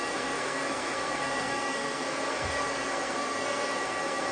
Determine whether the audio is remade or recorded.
remade